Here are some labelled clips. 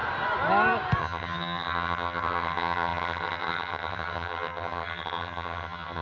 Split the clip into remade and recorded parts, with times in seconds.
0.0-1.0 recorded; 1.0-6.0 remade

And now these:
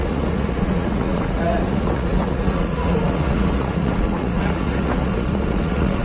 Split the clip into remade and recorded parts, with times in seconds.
0.0-6.0 remade

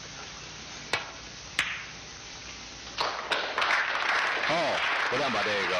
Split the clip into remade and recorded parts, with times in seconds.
0.0-2.4 remade; 2.4-5.8 recorded

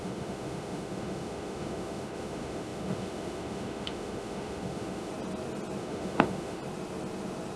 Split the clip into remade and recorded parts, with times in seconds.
0.0-5.1 remade; 5.1-5.8 recorded; 5.8-6.6 remade; 6.6-7.6 recorded

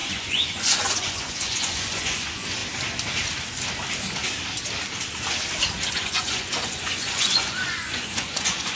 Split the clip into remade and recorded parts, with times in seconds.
0.0-2.6 remade; 2.6-5.9 recorded; 5.9-8.8 remade